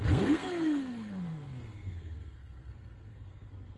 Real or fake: fake